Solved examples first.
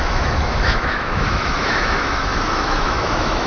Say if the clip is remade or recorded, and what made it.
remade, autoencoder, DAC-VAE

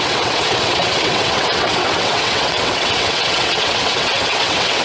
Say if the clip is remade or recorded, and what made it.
remade, vocoder, WaveNeXt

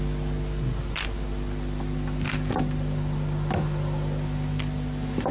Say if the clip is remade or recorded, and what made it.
recorded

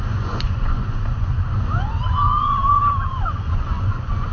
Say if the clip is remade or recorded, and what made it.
remade, vocoder, Vocos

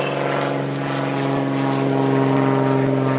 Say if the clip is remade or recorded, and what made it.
recorded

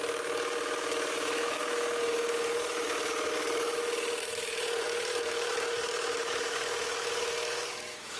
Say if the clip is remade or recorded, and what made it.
remade, autoencoder, DAC-VAE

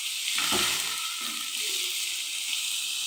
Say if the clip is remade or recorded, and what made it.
recorded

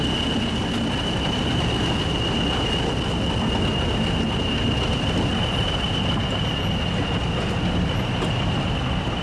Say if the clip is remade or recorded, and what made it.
recorded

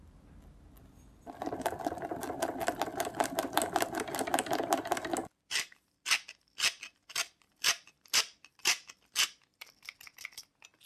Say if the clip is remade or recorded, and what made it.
recorded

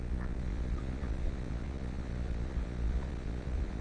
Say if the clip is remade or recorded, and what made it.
remade, vocoder, Vocos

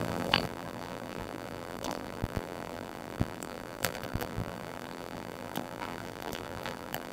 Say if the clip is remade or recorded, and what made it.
remade, vocoder, BigVGAN v2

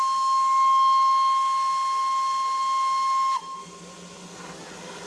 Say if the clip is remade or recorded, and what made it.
recorded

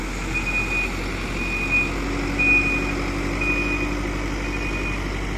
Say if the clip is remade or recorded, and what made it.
recorded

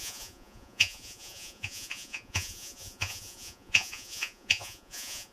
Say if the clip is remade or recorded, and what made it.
remade, vocoder, Vocos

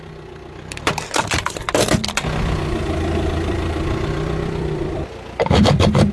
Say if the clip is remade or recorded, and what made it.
remade, vocoder, BigVGAN v2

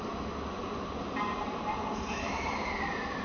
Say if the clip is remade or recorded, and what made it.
recorded